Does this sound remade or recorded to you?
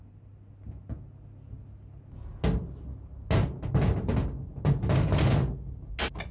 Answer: recorded